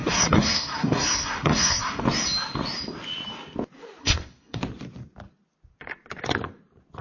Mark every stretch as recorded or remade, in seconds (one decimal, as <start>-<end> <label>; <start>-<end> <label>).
0.0-2.0 remade; 2.0-4.0 recorded; 4.0-4.6 remade; 4.6-7.0 recorded

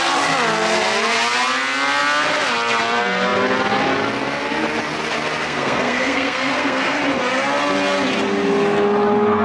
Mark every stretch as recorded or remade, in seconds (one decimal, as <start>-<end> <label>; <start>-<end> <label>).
0.0-5.4 recorded; 5.4-7.0 remade; 7.0-9.4 recorded

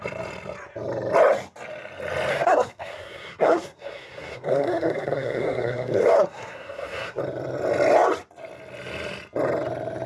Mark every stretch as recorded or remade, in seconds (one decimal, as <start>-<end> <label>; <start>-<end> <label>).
0.0-2.3 recorded; 2.3-7.2 remade; 7.2-10.1 recorded

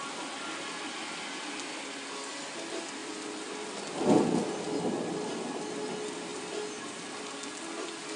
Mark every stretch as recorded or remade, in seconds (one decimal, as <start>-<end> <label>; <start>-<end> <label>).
0.0-8.2 recorded